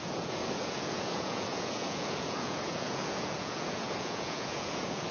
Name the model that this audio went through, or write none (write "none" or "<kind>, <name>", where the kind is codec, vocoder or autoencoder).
vocoder, Vocos